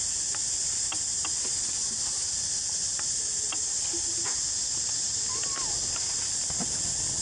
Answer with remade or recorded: recorded